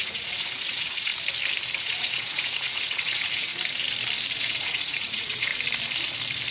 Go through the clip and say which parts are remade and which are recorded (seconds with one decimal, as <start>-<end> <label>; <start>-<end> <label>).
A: 0.0-1.1 remade; 1.1-1.8 recorded; 1.8-3.5 remade; 3.5-4.4 recorded; 4.4-5.5 remade; 5.5-6.5 recorded